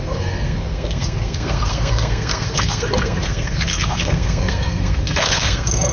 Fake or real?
fake